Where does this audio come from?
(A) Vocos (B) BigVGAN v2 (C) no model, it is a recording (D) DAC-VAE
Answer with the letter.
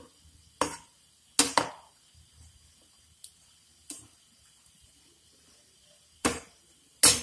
C